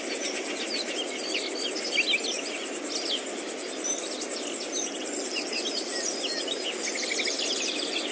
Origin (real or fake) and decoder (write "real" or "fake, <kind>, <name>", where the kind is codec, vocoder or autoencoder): real